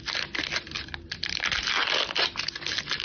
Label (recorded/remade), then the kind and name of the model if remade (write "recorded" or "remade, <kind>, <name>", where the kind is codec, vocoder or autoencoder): recorded